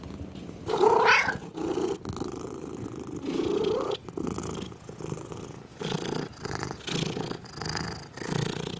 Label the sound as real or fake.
real